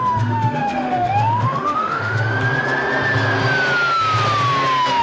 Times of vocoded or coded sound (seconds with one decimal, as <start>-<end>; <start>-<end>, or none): 0.0-2.3